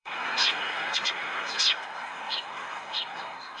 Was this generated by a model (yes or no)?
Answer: yes